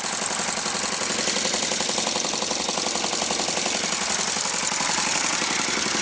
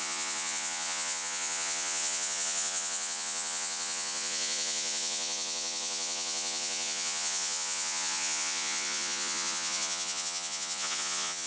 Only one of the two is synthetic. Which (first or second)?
second